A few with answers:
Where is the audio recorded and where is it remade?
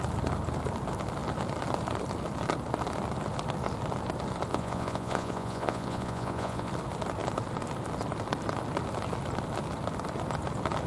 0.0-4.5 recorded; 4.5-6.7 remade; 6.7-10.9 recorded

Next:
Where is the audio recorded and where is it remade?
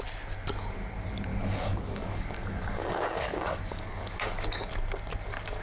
0.0-1.3 recorded; 1.3-4.7 remade; 4.7-5.6 recorded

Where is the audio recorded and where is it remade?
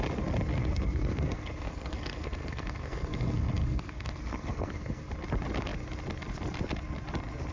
0.0-0.6 recorded; 0.6-5.1 remade; 5.1-7.5 recorded